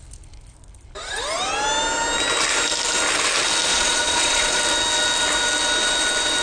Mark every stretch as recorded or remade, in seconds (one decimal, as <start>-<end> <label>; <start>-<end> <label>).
0.0-3.7 recorded; 3.7-4.6 remade; 4.6-6.4 recorded